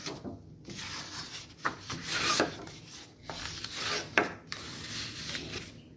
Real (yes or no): yes